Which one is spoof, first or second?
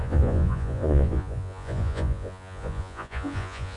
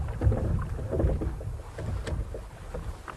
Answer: first